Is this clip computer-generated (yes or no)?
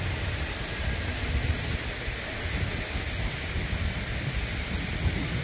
no